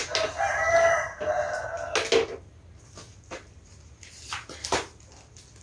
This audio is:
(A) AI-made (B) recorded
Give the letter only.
B